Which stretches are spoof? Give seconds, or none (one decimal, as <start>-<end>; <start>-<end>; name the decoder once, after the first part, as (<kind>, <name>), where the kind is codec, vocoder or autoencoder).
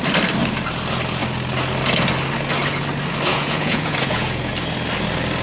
3.3-4.5 (vocoder, Vocos)